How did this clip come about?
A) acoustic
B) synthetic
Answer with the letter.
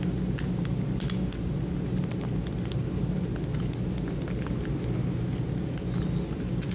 A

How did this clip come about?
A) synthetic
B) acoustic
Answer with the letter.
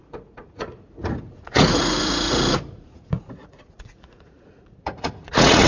A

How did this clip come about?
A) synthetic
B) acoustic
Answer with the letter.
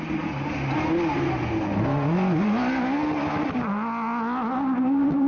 B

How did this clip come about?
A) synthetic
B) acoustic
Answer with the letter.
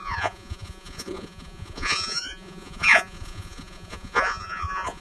A